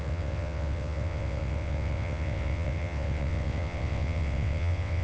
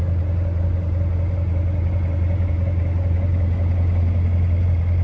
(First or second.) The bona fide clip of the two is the second